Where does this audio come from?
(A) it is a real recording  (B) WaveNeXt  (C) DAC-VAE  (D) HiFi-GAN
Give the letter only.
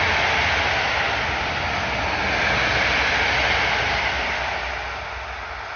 A